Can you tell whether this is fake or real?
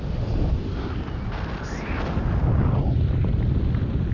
real